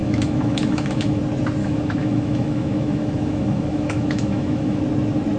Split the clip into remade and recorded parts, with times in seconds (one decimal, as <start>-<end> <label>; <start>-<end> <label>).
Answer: 0.0-1.2 remade; 1.2-1.6 recorded; 1.6-4.8 remade; 4.8-5.4 recorded